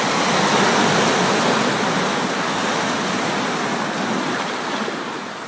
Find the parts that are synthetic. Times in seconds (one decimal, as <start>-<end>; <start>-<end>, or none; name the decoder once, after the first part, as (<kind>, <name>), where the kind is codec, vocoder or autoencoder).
none